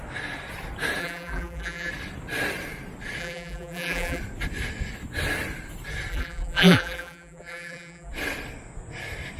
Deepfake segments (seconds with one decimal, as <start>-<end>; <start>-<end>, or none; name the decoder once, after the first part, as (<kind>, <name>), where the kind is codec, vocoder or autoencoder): 1.0-1.9 (vocoder, BigVGAN v2); 3.2-4.2; 6.1-8.1